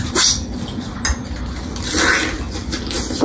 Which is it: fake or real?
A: real